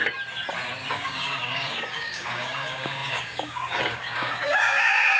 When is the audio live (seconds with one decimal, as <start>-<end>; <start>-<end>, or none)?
0.0-0.9